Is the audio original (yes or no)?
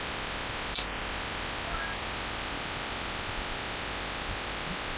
yes